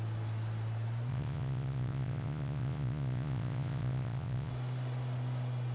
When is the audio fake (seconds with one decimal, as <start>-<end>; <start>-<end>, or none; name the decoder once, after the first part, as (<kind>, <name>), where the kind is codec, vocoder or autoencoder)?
1.1-4.5 (vocoder, Vocos)